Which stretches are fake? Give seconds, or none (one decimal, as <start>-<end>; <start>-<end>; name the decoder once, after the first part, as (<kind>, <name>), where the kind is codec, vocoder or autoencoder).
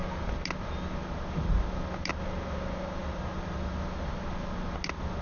none